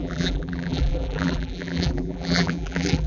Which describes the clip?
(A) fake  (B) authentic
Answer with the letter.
A